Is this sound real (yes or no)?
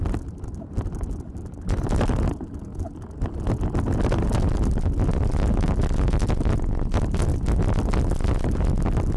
yes